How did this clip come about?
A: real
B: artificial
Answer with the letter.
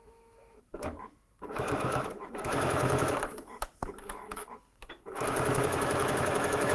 B